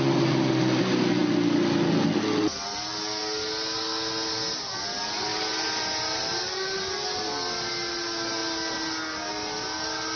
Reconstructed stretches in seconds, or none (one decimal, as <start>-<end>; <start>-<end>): none